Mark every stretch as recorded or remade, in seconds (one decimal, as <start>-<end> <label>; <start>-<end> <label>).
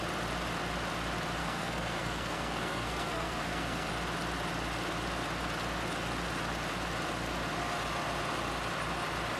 0.0-1.4 recorded; 1.4-3.9 remade; 3.9-9.4 recorded